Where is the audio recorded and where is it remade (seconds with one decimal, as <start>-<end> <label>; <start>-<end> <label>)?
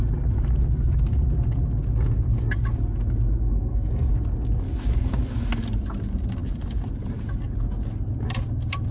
0.0-3.4 recorded; 3.4-4.1 remade; 4.1-8.9 recorded